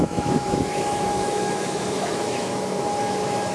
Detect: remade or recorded remade